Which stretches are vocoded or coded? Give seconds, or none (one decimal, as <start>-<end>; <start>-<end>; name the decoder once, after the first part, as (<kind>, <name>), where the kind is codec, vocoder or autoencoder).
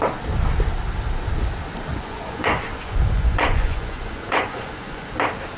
1.9-5.1 (vocoder, Vocos)